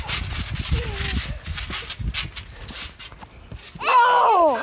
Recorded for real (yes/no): yes